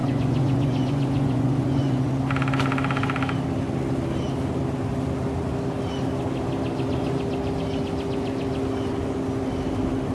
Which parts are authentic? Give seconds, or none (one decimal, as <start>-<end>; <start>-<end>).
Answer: 2.1-10.1